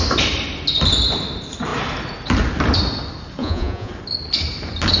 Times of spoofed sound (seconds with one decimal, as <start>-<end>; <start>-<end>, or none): 3.4-3.9